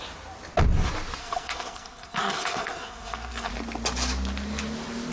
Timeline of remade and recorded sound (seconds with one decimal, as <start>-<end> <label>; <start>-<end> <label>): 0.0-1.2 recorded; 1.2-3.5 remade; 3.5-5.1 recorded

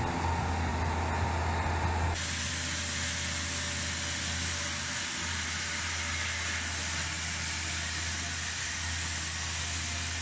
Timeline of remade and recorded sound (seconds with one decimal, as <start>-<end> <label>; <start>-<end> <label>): 0.0-10.2 recorded

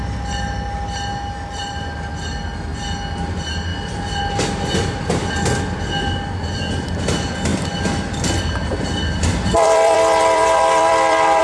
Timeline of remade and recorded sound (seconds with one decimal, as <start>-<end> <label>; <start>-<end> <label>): 0.0-3.7 recorded; 3.7-4.2 remade; 4.2-7.5 recorded; 7.5-11.4 remade